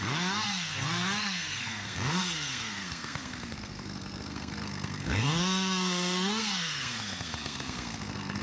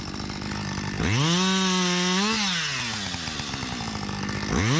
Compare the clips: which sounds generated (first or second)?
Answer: first